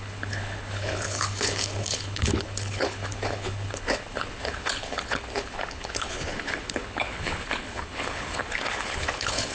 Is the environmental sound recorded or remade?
remade